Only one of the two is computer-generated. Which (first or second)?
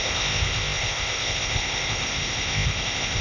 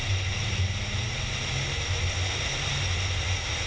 first